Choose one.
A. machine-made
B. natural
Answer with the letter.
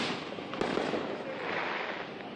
B